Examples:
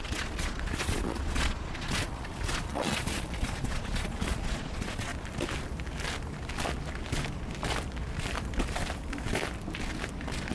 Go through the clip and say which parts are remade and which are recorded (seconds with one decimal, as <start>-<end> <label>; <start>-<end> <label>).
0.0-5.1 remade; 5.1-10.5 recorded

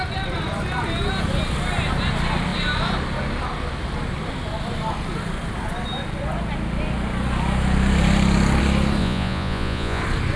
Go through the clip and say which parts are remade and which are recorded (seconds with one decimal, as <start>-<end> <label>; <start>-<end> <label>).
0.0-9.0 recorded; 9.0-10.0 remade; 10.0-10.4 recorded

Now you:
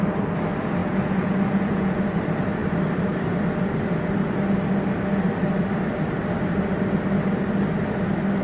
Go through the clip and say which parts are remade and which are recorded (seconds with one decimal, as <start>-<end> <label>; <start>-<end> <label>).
0.0-0.8 recorded; 0.8-2.0 remade; 2.0-8.4 recorded

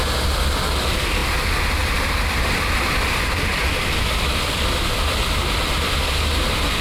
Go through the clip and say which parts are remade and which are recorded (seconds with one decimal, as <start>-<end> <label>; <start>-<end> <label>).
0.0-3.5 recorded; 3.5-5.4 remade; 5.4-6.8 recorded